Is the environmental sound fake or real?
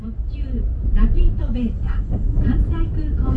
fake